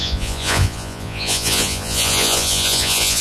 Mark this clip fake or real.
fake